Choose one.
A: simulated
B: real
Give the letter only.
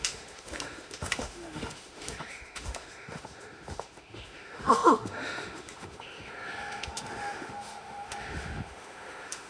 A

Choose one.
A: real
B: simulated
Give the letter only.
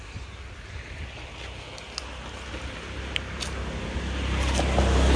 A